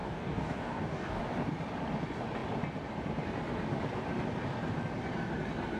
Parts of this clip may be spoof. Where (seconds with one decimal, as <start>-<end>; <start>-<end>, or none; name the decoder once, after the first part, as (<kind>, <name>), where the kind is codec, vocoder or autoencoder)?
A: 0.0-1.2 (codec, DAC)